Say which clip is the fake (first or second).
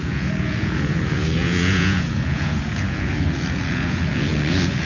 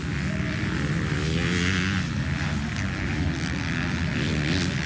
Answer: first